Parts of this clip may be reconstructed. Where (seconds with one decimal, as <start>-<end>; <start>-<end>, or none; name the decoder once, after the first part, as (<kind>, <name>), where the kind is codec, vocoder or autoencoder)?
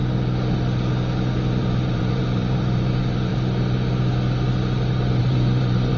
1.6-3.3 (vocoder, BigVGAN v2); 5.2-6.0